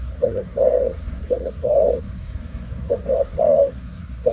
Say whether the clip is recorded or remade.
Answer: remade